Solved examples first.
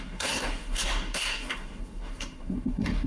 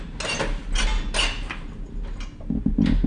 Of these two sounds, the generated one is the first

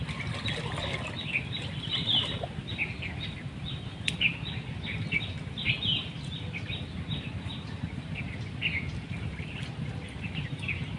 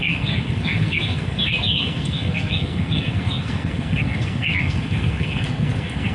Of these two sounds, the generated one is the second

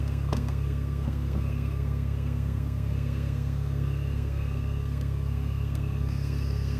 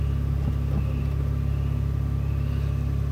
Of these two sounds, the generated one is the first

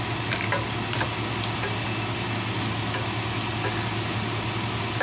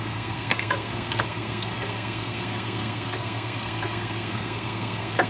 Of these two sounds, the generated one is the second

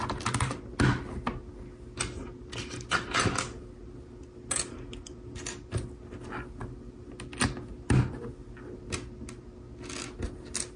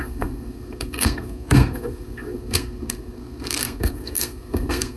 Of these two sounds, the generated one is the second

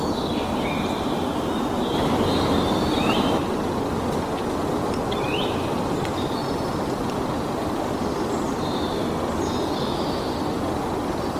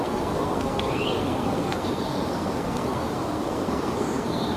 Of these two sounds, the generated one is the second